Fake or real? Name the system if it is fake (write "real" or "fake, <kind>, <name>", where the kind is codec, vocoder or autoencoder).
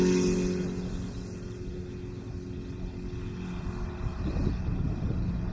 real